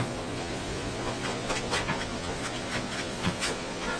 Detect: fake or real fake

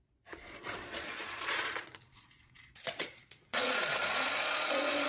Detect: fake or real fake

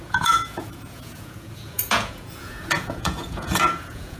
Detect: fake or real fake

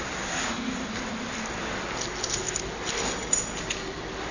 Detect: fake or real real